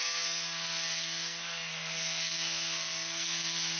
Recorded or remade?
remade